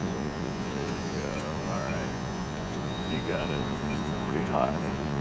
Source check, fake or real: fake